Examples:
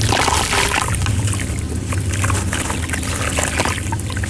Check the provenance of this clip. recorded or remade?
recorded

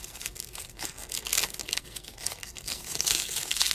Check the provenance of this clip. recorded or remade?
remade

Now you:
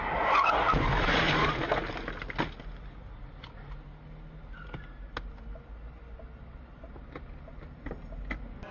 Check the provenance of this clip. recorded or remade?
recorded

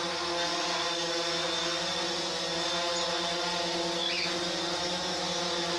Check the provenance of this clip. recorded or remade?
recorded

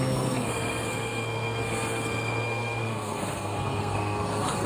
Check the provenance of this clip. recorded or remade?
remade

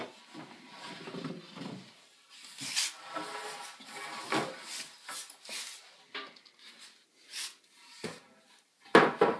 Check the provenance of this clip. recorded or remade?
recorded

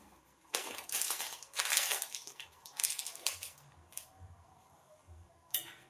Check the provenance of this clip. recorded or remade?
remade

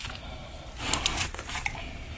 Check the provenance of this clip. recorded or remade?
recorded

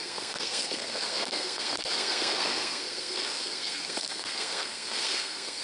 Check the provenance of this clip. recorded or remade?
remade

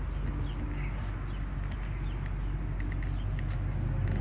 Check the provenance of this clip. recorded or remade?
recorded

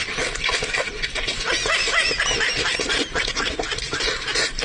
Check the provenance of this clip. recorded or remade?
recorded